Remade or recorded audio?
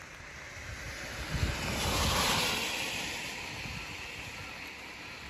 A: recorded